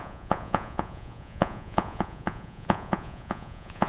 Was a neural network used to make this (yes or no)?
yes